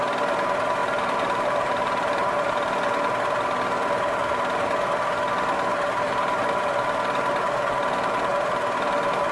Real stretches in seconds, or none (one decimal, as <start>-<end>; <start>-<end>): 0.0-0.8; 2.5-5.7; 6.5-9.3